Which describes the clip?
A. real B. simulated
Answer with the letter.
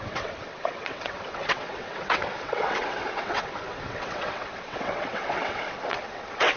B